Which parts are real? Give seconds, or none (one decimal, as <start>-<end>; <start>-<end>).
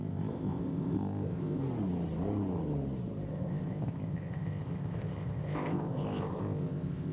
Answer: 1.6-3.3